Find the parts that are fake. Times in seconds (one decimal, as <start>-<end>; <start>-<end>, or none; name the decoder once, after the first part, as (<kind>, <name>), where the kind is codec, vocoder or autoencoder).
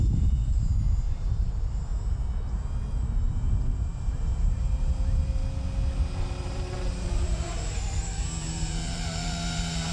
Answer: 0.0-1.9 (vocoder, BigVGAN v2); 3.3-5.4; 6.2-9.9